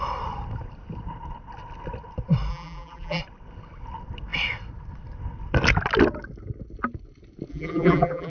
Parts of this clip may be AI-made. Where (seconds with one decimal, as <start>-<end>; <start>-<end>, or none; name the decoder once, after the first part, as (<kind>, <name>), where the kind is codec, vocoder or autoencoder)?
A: 2.5-3.2 (vocoder, BigVGAN v2); 7.5-8.3